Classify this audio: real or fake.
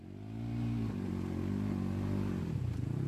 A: real